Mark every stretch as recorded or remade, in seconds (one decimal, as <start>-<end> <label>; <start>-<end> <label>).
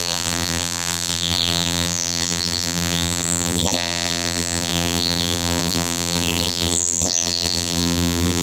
0.0-8.4 remade